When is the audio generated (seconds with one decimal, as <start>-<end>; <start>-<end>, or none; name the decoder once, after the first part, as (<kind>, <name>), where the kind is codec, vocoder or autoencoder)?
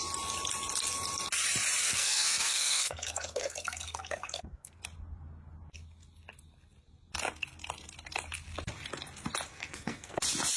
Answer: 1.8-4.8 (codec, SNAC); 9.5-10.2